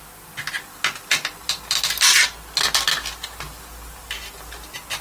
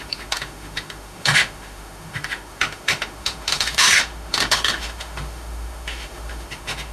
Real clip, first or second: first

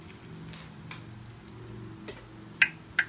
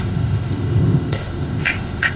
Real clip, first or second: first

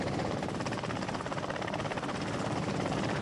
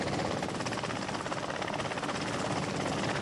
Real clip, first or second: second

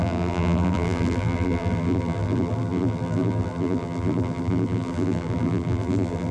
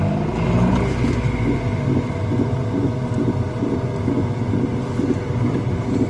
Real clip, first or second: second